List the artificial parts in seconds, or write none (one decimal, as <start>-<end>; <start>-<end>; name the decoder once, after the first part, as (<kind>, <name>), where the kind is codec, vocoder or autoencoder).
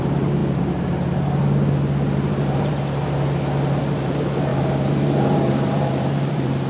0.0-0.4 (vocoder, BigVGAN v2); 2.3-2.7; 3.8-6.7